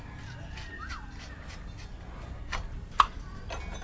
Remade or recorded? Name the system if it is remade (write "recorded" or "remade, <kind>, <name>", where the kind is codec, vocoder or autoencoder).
recorded